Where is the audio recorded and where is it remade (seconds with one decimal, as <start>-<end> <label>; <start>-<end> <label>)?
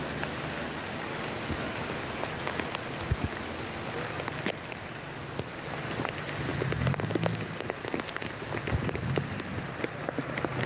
0.0-10.7 recorded